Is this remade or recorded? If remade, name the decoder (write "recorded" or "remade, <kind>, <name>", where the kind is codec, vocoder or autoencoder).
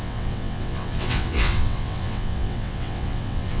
remade, vocoder, WaveNeXt